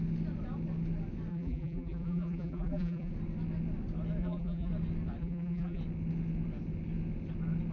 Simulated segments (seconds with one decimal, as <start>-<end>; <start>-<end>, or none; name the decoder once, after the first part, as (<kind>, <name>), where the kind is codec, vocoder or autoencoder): 1.3-3.1 (vocoder, BigVGAN v2); 4.2-4.7; 5.2-5.8